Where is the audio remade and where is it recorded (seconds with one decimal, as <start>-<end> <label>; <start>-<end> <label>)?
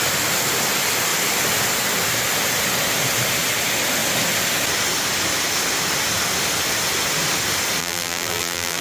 0.0-7.8 recorded; 7.8-8.8 remade